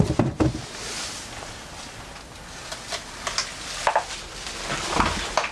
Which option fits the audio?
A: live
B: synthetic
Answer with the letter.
A